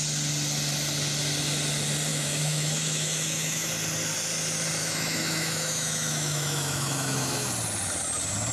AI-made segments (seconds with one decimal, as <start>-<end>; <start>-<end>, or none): 2.1-3.7; 4.8-7.5